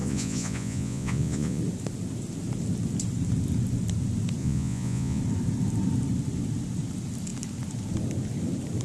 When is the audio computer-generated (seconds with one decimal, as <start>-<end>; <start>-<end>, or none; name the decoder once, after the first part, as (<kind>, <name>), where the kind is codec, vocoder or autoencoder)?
0.0-1.6 (vocoder, Vocos); 4.4-5.2